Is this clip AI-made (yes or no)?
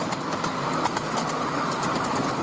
no